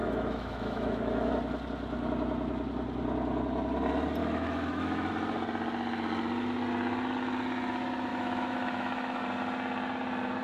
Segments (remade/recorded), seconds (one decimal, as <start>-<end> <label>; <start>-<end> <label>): 0.0-1.3 remade; 1.3-4.2 recorded; 4.2-5.1 remade; 5.1-8.1 recorded; 8.1-9.2 remade; 9.2-10.4 recorded